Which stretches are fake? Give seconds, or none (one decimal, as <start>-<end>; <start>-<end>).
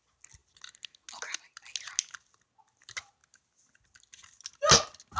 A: none